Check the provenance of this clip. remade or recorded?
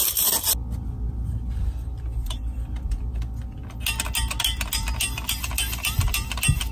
recorded